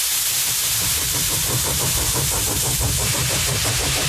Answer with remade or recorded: remade